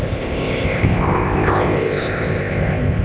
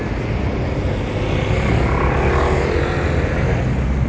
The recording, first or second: second